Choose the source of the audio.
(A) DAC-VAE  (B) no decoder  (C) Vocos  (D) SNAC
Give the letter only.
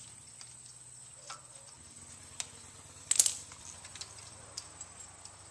B